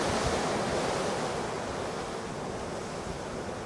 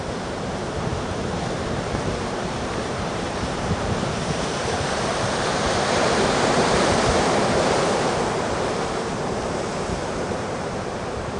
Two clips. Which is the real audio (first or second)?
first